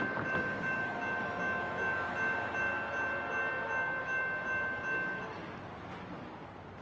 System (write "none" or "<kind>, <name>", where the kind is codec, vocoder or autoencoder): none